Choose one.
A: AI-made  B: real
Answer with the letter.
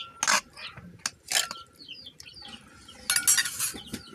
B